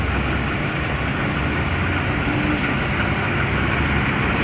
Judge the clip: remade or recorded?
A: recorded